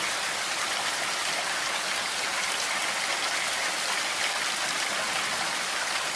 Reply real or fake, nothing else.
real